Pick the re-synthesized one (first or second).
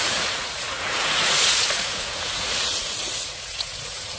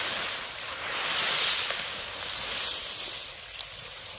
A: first